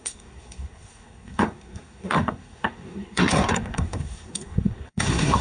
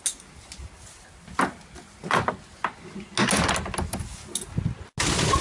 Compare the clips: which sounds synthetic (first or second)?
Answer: first